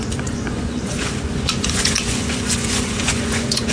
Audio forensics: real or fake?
fake